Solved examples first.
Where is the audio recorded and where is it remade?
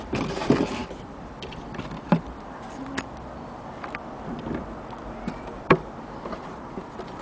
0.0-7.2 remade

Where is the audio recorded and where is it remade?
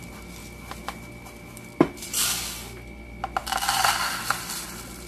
0.0-5.1 remade